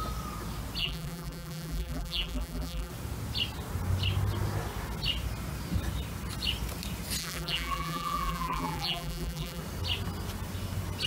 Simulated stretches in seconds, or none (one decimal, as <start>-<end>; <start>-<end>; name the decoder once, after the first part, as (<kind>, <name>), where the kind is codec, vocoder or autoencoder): 0.8-2.9 (vocoder, BigVGAN v2); 7.2-9.6